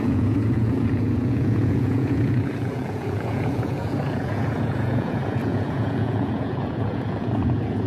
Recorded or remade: remade